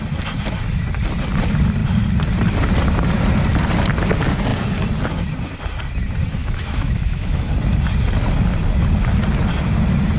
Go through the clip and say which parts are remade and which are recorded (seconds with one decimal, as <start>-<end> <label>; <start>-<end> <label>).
0.0-6.4 recorded; 6.4-7.5 remade; 7.5-10.2 recorded